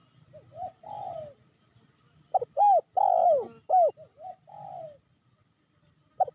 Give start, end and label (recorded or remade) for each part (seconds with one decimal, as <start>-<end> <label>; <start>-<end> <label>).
0.0-6.3 recorded